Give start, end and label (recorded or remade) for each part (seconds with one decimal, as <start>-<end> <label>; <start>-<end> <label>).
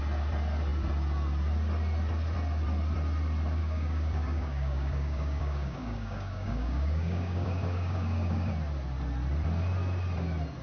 0.0-3.6 recorded; 3.6-8.5 remade; 8.5-10.6 recorded